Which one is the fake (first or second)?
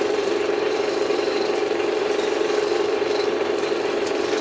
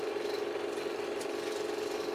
first